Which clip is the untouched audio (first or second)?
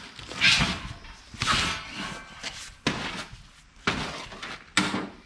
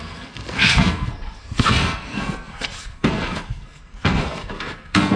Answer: first